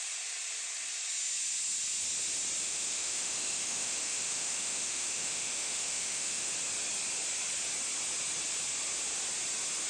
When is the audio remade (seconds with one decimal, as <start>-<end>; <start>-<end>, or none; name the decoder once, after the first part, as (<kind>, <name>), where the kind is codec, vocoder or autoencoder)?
2.6-6.5 (autoencoder, DAC-VAE)